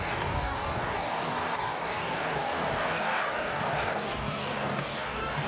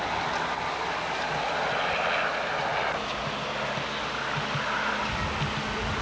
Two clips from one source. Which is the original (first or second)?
second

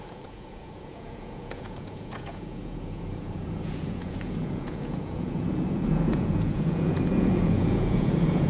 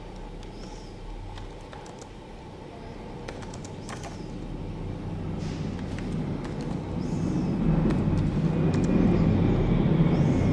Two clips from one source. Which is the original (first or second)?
second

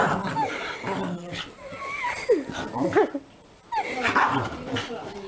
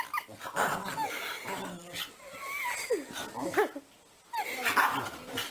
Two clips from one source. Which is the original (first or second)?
second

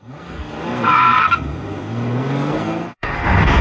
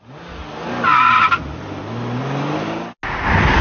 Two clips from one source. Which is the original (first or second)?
second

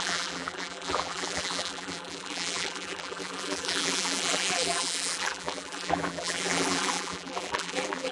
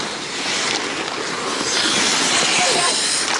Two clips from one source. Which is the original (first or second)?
second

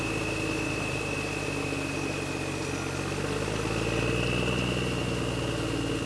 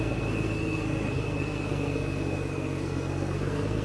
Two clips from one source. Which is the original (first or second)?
first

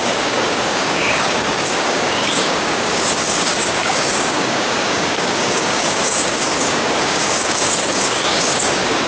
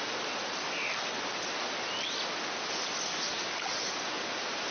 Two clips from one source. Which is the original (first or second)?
second